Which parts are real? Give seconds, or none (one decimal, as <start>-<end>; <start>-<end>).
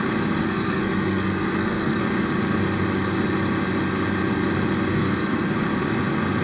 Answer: 0.0-0.4; 2.0-4.9; 5.5-6.4